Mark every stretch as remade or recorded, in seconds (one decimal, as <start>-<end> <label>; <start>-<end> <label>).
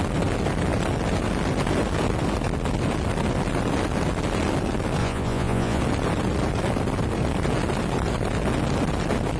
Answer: 0.0-5.0 recorded; 5.0-5.8 remade; 5.8-9.4 recorded